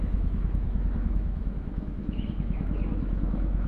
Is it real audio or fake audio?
fake